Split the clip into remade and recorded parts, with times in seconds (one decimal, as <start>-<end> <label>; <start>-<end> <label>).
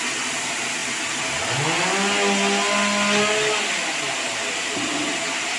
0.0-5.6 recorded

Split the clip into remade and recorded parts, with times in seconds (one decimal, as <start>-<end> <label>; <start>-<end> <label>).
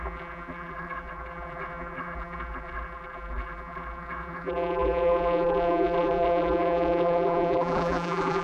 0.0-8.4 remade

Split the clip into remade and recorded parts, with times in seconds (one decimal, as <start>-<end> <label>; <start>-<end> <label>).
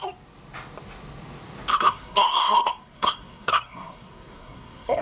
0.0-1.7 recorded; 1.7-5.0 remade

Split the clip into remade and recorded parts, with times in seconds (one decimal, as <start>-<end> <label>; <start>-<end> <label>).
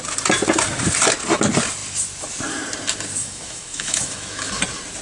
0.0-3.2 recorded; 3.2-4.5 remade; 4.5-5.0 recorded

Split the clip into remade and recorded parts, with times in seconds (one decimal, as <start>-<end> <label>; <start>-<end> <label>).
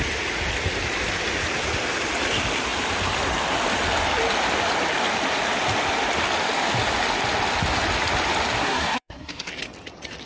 0.0-8.6 recorded; 8.6-9.5 remade; 9.5-10.3 recorded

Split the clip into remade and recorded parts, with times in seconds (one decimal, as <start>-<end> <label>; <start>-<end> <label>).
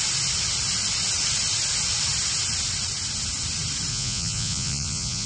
0.0-3.9 recorded; 3.9-5.3 remade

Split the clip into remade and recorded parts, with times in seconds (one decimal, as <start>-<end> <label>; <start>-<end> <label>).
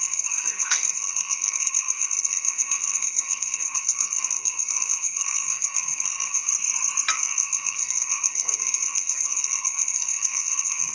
0.0-6.5 remade; 6.5-7.1 recorded; 7.1-10.9 remade